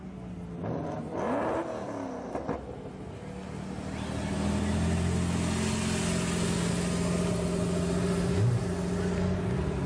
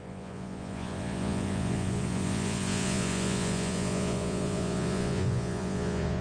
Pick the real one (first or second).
first